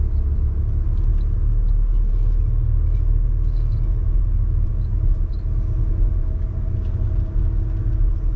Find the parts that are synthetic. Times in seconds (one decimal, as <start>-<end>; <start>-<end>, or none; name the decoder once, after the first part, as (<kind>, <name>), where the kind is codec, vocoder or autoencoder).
none